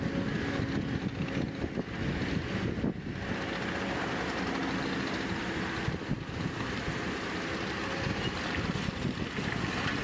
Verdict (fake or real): real